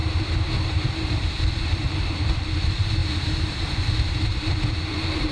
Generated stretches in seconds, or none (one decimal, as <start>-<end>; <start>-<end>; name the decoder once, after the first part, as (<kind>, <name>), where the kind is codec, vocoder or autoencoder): 0.0-5.3 (vocoder, BigVGAN v2)